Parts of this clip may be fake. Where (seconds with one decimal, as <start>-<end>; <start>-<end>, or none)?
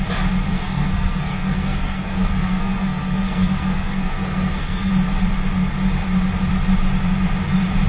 0.5-4.9